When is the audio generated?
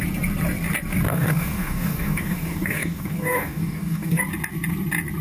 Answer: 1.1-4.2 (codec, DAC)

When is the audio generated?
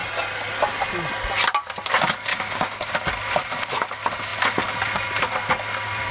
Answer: 2.3-2.9 (codec, DAC)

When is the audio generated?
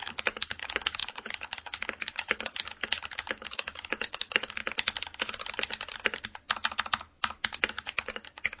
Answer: 0.0-4.6 (codec, DAC); 7.7-8.6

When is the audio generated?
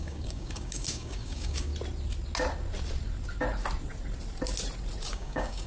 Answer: 0.0-1.7 (codec, DAC); 5.1-5.7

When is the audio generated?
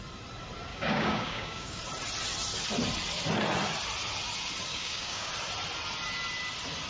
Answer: 0.7-1.8 (codec, DAC); 4.7-5.3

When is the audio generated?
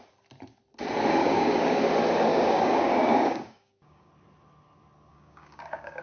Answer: 1.2-1.8 (codec, DAC); 2.3-4.1; 5.1-6.0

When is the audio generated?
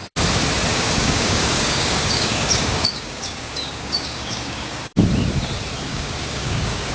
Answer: 0.7-4.8 (codec, DAC); 5.9-6.9